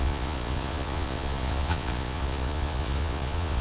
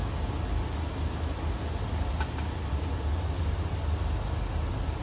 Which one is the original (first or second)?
second